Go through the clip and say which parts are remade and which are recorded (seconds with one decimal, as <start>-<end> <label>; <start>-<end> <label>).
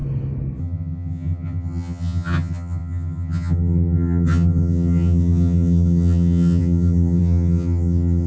0.0-0.6 recorded; 0.6-8.3 remade